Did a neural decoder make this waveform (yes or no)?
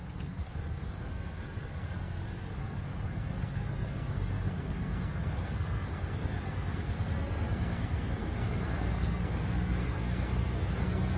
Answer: yes